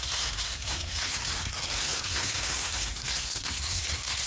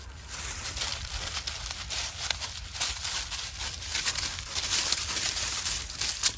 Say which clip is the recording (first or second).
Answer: second